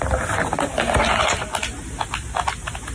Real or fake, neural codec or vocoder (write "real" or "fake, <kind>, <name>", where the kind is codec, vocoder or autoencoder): real